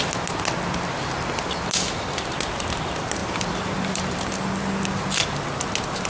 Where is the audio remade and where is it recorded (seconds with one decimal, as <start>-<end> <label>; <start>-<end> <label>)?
0.0-3.2 recorded; 3.2-4.2 remade; 4.2-6.1 recorded

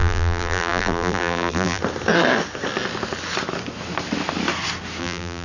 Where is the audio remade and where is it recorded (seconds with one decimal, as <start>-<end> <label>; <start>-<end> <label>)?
0.0-1.8 remade; 1.8-5.0 recorded; 5.0-5.4 remade

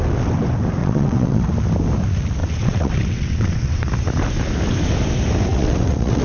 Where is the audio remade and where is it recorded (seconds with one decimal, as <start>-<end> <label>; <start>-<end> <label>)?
0.0-0.8 recorded; 0.8-1.5 remade; 1.5-2.4 recorded; 2.4-3.9 remade; 3.9-5.5 recorded; 5.5-6.2 remade

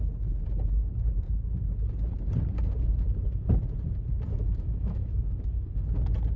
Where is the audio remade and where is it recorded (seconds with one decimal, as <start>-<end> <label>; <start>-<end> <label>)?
0.0-4.3 recorded; 4.3-5.2 remade; 5.2-6.4 recorded

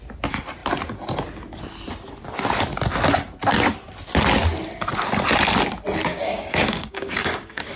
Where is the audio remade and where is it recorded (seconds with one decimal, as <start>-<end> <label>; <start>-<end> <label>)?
0.0-6.1 recorded; 6.1-7.8 remade

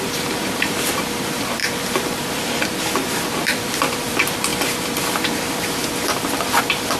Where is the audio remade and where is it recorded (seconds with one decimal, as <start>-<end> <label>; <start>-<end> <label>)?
0.0-7.0 remade